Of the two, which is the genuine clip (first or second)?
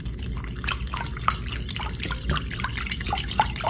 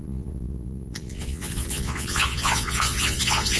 first